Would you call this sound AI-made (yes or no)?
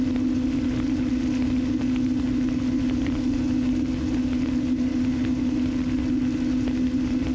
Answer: no